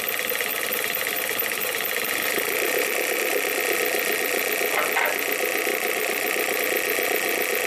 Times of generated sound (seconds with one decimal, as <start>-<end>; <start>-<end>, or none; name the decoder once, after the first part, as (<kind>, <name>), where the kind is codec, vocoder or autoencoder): 0.5-3.6 (vocoder, BigVGAN v2); 5.7-6.6